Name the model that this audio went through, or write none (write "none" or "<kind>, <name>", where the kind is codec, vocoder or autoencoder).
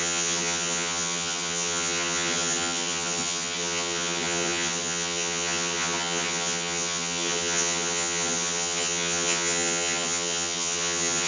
vocoder, HiFi-GAN